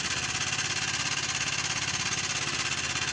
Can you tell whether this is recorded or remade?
recorded